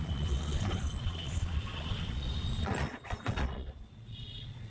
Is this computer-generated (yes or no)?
yes